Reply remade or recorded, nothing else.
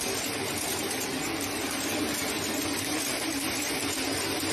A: recorded